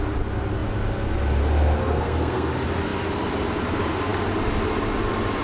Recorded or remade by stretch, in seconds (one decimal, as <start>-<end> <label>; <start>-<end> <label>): 0.0-1.8 recorded; 1.8-2.5 remade; 2.5-5.4 recorded